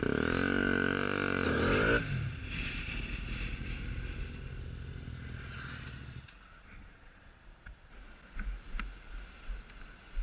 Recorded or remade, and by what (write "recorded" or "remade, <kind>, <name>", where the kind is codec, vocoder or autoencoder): recorded